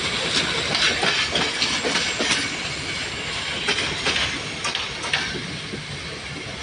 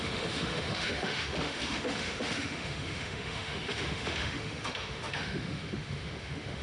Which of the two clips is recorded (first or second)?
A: first